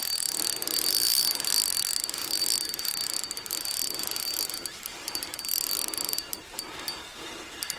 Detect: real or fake real